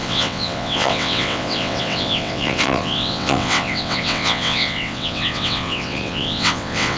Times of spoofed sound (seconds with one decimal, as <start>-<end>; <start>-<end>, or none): 0.0-7.0